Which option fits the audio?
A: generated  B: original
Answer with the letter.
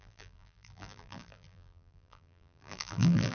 A